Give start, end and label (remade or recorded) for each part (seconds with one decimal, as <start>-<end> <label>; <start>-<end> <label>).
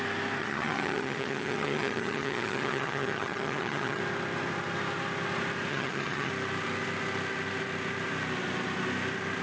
0.0-0.4 recorded; 0.4-4.0 remade; 4.0-5.7 recorded; 5.7-6.3 remade; 6.3-9.4 recorded